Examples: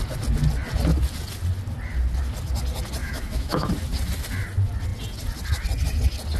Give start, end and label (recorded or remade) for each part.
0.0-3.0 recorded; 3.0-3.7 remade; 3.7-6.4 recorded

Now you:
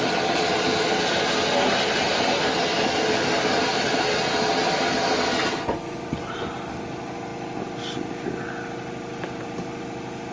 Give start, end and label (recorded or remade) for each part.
0.0-10.3 recorded

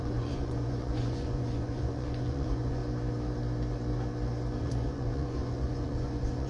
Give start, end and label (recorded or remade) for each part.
0.0-2.8 remade; 2.8-4.6 recorded; 4.6-6.5 remade

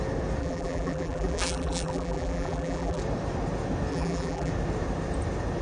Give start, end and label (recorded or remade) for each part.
0.0-0.4 recorded; 0.4-3.0 remade; 3.0-3.9 recorded; 3.9-4.5 remade; 4.5-5.6 recorded

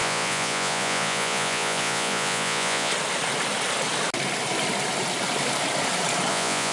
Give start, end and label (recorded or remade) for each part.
0.0-2.9 remade; 2.9-6.3 recorded; 6.3-6.7 remade

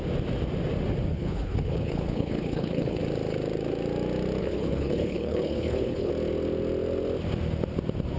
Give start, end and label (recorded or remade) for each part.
0.0-1.1 recorded; 1.1-3.0 remade; 3.0-4.4 recorded; 4.4-6.1 remade; 6.1-8.2 recorded

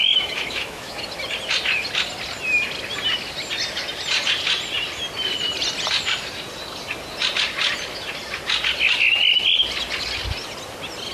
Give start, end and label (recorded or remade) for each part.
0.0-1.0 remade; 1.0-11.1 recorded

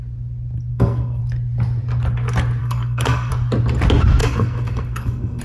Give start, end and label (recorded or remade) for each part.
0.0-0.7 recorded; 0.7-1.2 remade; 1.2-2.6 recorded; 2.6-3.3 remade; 3.3-4.2 recorded; 4.2-5.4 remade